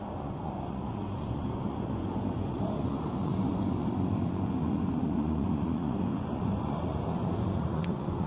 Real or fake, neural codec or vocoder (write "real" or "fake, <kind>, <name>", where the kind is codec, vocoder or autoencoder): fake, vocoder, Vocos